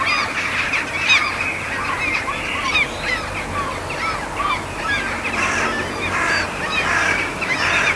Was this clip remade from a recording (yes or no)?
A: no